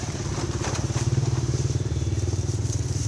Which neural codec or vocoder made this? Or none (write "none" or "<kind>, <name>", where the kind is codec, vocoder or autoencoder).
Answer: vocoder, BigVGAN v2